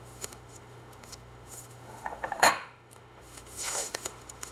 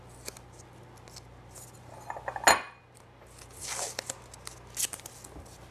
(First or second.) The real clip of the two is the second